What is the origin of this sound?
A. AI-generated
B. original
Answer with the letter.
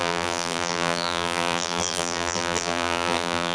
A